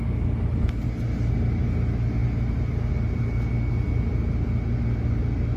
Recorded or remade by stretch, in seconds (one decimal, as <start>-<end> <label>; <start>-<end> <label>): 0.0-5.6 recorded